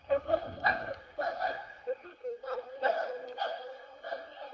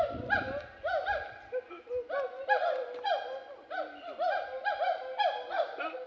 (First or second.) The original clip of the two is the second